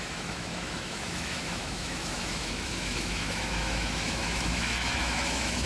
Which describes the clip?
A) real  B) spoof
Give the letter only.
B